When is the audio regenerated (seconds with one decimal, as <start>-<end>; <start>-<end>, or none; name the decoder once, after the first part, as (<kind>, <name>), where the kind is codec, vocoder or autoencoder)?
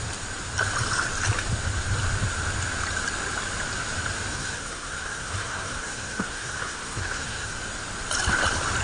4.3-7.6 (codec, SNAC)